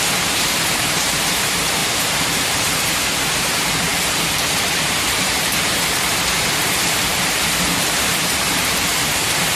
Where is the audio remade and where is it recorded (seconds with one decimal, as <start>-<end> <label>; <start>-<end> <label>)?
0.0-3.9 remade; 3.9-4.6 recorded; 4.6-9.6 remade